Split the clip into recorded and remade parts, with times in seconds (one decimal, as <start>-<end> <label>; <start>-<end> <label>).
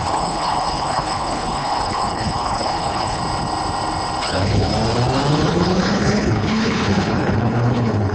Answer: 0.0-3.2 remade; 3.2-4.2 recorded; 4.2-4.7 remade; 4.7-5.3 recorded; 5.3-8.1 remade